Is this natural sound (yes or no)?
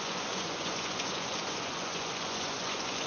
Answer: no